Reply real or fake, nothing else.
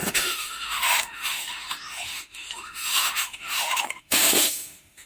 fake